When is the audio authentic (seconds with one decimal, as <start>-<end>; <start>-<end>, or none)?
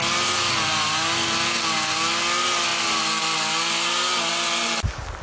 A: 0.0-5.2